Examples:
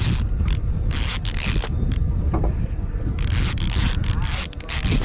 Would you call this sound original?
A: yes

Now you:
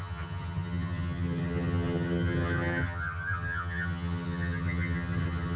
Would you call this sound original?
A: no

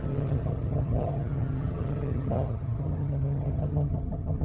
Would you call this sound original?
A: no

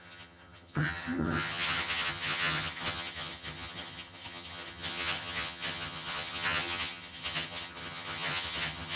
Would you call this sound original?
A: no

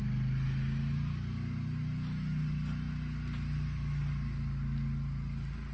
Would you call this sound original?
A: yes